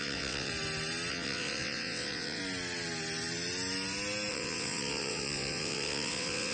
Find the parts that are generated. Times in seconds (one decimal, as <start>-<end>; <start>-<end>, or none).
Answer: 0.0-0.5; 1.1-2.4; 4.3-6.5